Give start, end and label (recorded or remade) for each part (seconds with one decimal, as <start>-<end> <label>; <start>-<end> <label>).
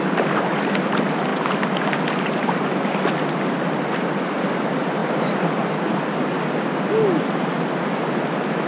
0.0-8.7 recorded